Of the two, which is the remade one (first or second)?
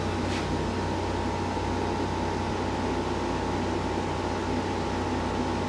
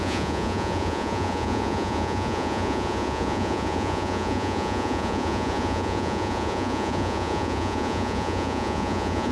second